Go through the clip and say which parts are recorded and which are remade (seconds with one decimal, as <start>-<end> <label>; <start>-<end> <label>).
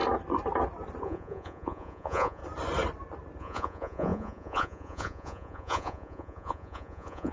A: 0.0-1.0 recorded; 1.0-2.4 remade; 2.4-3.4 recorded; 3.4-7.3 remade